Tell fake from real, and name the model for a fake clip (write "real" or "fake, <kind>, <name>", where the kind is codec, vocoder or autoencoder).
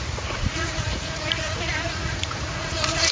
fake, vocoder, Vocos